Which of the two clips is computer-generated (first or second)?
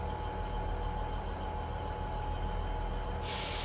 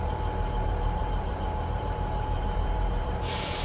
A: second